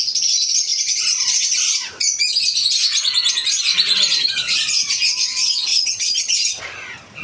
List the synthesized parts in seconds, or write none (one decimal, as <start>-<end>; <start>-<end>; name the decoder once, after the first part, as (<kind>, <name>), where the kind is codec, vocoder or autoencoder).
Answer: 5.7-6.6 (vocoder, HiFi-GAN)